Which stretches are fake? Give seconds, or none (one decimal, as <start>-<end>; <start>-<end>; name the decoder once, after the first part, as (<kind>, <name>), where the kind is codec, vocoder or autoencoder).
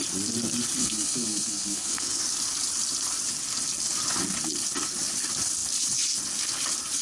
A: 0.8-2.2 (codec, SNAC)